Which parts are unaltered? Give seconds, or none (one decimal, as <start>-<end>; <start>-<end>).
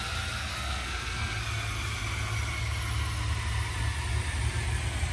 0.0-0.5; 1.4-5.1